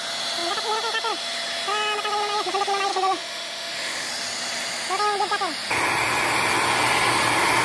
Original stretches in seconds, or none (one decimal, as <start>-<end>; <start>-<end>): 0.0-2.9; 4.1-7.6